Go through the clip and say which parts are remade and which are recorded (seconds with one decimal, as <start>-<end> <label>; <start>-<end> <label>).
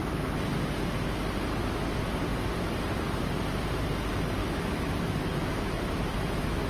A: 0.0-0.5 remade; 0.5-4.4 recorded; 4.4-6.7 remade